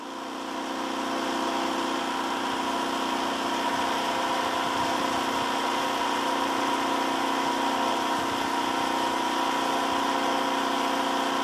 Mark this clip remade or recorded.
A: recorded